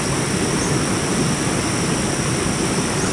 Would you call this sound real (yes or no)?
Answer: yes